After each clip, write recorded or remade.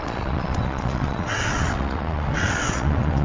remade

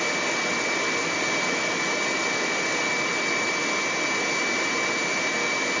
recorded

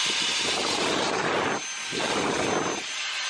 recorded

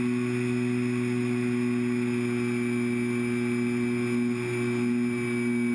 recorded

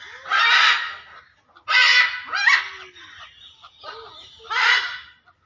recorded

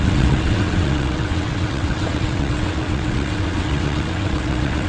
remade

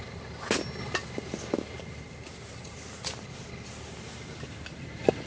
recorded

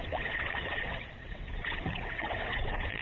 remade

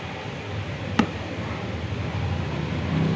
recorded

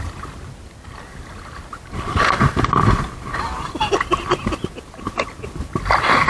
recorded